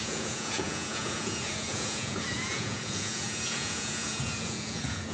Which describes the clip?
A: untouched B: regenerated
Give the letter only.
B